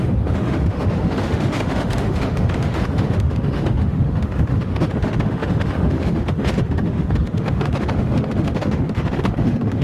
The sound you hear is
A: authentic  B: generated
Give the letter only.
B